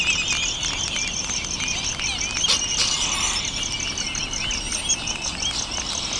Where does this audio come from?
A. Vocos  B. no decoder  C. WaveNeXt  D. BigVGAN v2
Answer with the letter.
B